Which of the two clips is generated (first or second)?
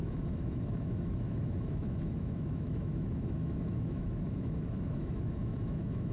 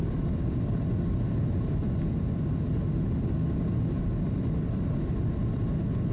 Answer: first